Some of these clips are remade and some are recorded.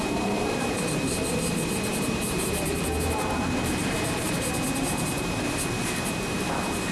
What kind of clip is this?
remade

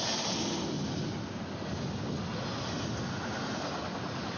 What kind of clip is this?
recorded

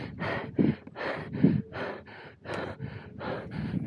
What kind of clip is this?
recorded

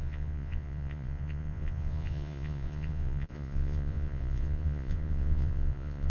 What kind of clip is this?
remade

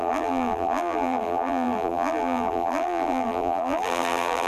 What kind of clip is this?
remade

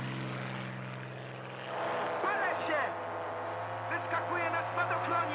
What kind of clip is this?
recorded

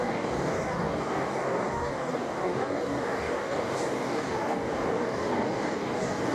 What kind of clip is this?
remade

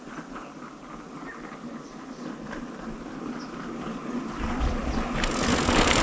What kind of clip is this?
recorded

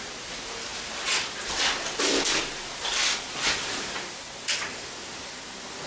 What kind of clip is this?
recorded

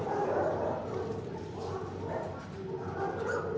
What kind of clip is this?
recorded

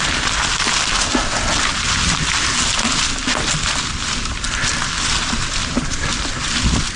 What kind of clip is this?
recorded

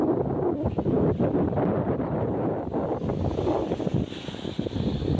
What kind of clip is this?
recorded